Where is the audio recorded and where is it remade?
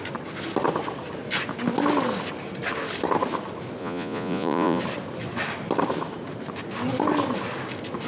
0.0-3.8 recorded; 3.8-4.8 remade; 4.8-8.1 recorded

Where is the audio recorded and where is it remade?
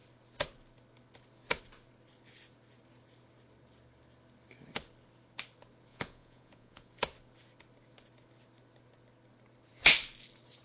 0.0-5.9 recorded; 5.9-6.9 remade; 6.9-10.6 recorded